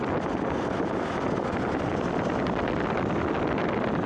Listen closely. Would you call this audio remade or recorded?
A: recorded